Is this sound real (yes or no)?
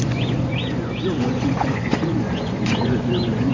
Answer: no